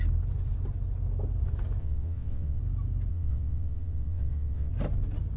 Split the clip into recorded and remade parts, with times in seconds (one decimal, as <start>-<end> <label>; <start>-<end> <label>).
0.0-1.8 recorded; 1.8-2.6 remade; 2.6-3.1 recorded; 3.1-4.7 remade; 4.7-5.4 recorded